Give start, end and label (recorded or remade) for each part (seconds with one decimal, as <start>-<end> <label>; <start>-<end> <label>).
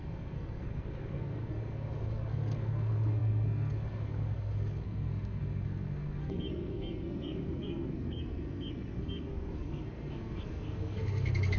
0.0-11.6 remade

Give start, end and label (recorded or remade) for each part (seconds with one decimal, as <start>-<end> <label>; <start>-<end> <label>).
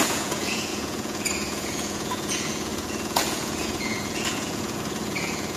0.0-5.6 remade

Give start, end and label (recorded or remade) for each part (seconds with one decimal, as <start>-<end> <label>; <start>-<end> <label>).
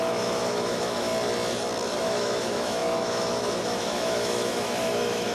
0.0-1.1 remade; 1.1-2.0 recorded; 2.0-5.3 remade